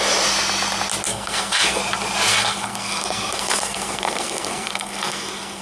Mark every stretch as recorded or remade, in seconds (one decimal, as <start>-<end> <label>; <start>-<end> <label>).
0.0-1.1 recorded; 1.1-1.8 remade; 1.8-2.3 recorded; 2.3-5.6 remade